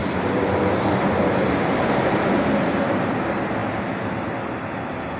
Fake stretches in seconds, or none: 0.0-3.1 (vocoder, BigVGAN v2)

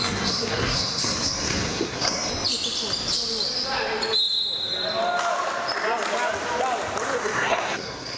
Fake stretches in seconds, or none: 0.0-2.3 (codec, SNAC); 7.2-8.2

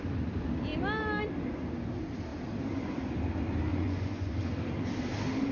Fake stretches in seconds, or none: 3.7-4.3 (vocoder, Vocos)

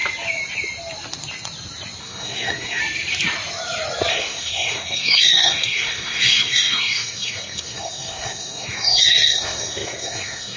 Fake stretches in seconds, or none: 2.0-2.8 (codec, SNAC); 4.1-10.6

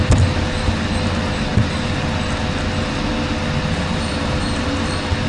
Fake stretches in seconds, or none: none

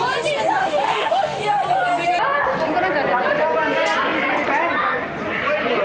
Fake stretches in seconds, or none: 0.6-1.4 (autoencoder, DAC-VAE)

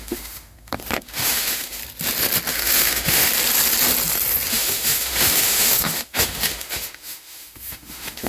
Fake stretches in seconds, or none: 0.0-1.8 (autoencoder, DAC-VAE); 2.5-3.3; 4.5-8.3

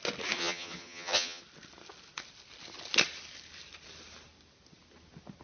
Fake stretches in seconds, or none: 0.4-1.4 (vocoder, HiFi-GAN)